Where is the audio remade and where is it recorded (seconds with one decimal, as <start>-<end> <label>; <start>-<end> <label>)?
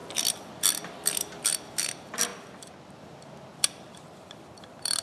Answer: 0.0-1.7 recorded; 1.7-2.3 remade; 2.3-3.0 recorded; 3.0-5.0 remade